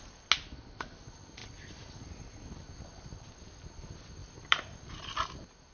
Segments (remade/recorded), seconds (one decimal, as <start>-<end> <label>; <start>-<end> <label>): 0.0-1.4 recorded; 1.4-3.3 remade; 3.3-4.2 recorded; 4.2-4.9 remade; 4.9-5.7 recorded

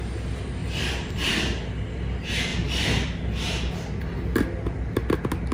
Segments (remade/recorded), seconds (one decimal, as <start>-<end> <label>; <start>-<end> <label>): 0.0-0.6 recorded; 0.6-1.3 remade; 1.3-5.5 recorded